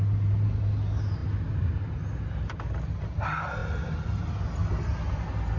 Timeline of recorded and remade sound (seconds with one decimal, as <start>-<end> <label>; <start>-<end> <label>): 0.0-5.6 recorded